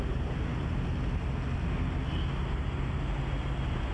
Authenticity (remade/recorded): recorded